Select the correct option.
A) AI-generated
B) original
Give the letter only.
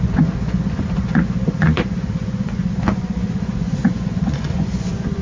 A